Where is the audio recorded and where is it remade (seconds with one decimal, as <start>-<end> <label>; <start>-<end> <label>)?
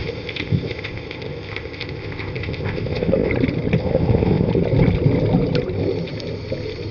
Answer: 0.0-3.3 remade; 3.3-3.8 recorded; 3.8-4.5 remade; 4.5-6.9 recorded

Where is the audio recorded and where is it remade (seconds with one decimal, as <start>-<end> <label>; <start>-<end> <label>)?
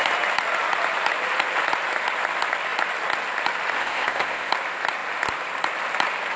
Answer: 0.0-3.8 recorded; 3.8-4.5 remade; 4.5-6.4 recorded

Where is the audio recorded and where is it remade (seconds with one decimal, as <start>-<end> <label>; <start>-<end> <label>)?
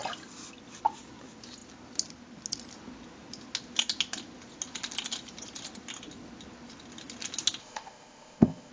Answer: 0.0-7.6 recorded; 7.6-8.7 remade